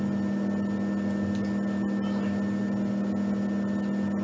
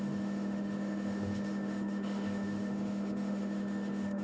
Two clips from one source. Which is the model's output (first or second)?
second